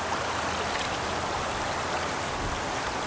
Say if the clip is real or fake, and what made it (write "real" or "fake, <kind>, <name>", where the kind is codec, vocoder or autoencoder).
real